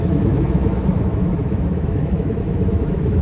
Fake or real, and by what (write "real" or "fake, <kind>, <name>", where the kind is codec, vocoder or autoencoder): fake, autoencoder, DAC-VAE